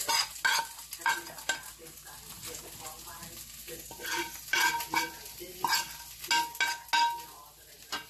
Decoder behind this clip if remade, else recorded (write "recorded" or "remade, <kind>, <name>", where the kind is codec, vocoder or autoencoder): recorded